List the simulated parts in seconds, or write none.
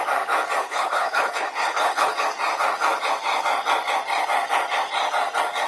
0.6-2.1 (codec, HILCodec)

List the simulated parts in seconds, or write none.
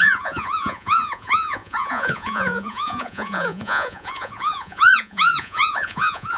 0.0-6.4 (vocoder, Vocos)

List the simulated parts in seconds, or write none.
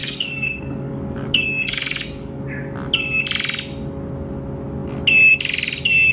0.0-2.4 (codec, DAC)